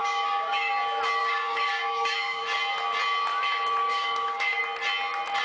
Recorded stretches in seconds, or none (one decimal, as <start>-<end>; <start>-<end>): 0.7-1.2; 2.4-3.8; 4.6-5.4